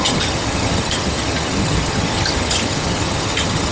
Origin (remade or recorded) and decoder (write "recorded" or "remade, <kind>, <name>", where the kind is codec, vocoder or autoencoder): remade, vocoder, HiFi-GAN